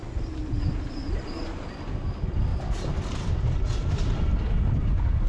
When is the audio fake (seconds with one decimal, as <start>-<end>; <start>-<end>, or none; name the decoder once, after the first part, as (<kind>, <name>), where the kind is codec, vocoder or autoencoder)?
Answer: none